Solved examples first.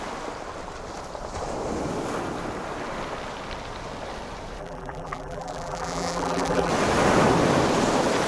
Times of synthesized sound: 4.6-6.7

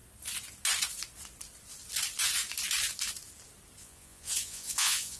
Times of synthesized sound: 3.8-5.2

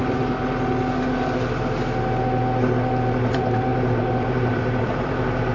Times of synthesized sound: 3.3-5.5

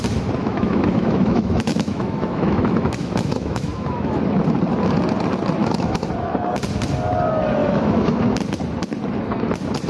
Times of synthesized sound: 0.4-4.2; 5.6-6.1; 7.6-8.2

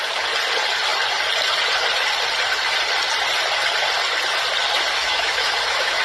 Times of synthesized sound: 5.0-6.0

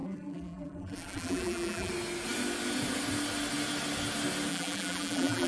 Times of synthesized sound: 0.0-1.9; 4.5-5.5